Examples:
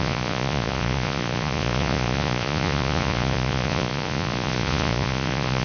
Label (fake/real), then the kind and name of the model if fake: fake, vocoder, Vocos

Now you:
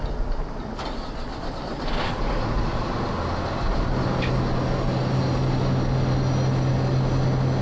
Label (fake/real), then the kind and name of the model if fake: real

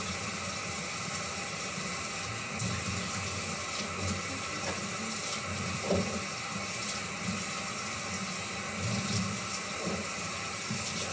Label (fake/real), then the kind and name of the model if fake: real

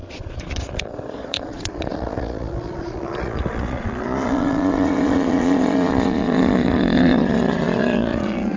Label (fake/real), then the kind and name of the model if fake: fake, vocoder, Vocos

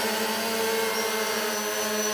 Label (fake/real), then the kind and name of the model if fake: real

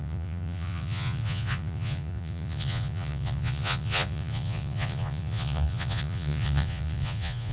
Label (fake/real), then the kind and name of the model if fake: fake, vocoder, Vocos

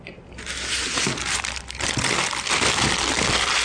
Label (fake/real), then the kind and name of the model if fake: real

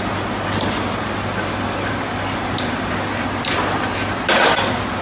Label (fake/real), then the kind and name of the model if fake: real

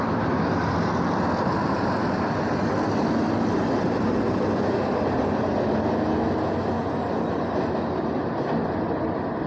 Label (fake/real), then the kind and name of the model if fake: real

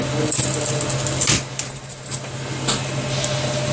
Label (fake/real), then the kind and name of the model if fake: real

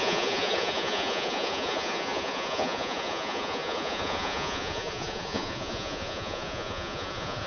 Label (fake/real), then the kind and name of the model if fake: fake, vocoder, Vocos